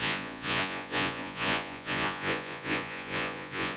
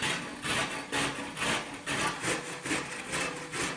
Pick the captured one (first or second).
second